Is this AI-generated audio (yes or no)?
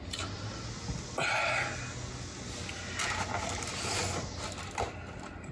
no